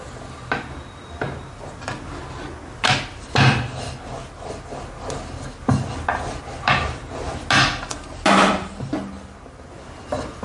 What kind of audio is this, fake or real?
real